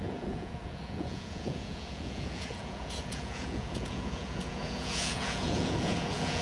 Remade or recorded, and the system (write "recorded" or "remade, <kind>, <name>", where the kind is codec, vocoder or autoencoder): remade, vocoder, Vocos